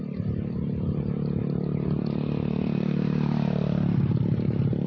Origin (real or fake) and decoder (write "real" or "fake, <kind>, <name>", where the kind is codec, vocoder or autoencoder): fake, vocoder, BigVGAN v2